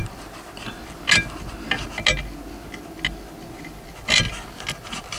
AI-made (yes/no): no